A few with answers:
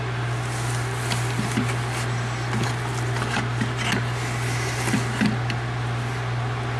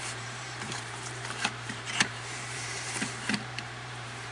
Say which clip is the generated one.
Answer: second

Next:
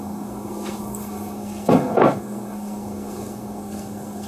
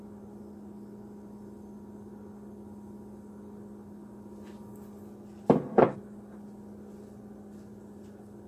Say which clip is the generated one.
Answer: first